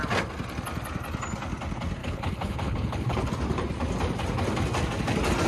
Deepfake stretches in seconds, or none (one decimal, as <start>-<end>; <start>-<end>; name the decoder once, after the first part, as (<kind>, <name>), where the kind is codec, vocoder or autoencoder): 2.0-3.3 (codec, HILCodec)